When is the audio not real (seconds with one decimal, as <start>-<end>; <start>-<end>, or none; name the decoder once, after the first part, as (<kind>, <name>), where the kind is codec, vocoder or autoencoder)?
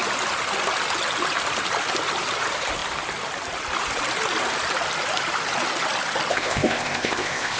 6.3-7.6 (codec, ZipCodec)